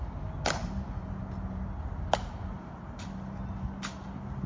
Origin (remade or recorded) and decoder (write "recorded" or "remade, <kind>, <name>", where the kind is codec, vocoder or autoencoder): recorded